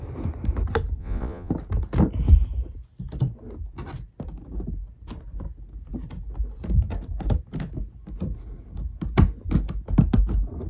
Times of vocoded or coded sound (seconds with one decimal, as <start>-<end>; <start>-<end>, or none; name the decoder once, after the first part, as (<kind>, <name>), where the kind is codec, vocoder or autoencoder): 1.0-1.5 (vocoder, Vocos)